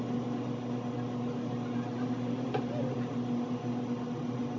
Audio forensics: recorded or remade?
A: recorded